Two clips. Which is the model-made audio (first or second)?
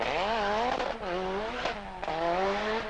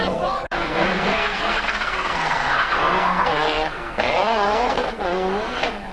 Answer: second